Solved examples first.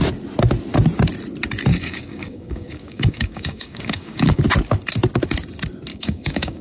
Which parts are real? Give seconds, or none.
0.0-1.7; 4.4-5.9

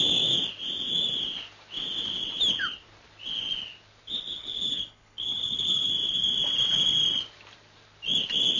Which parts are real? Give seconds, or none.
0.0-4.4; 5.9-8.6

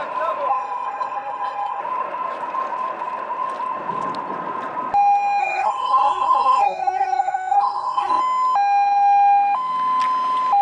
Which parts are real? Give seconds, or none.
0.0-0.5; 1.8-5.4; 8.2-10.6